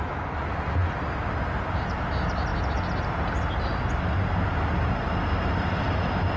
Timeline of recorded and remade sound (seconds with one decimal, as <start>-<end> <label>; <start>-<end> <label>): 0.0-6.4 recorded